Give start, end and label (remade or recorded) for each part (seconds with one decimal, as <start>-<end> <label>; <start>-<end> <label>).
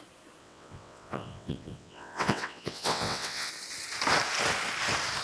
0.0-0.4 recorded; 0.4-3.5 remade; 3.5-5.2 recorded